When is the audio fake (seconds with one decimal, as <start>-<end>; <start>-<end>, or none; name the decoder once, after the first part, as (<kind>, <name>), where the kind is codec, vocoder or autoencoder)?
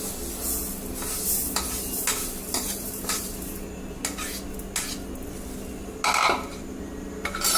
2.4-3.8 (vocoder, BigVGAN v2)